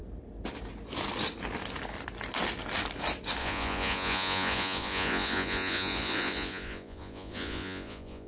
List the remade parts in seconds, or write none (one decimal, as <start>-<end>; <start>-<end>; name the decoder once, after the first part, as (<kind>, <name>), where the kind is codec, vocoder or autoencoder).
3.4-8.3 (vocoder, Vocos)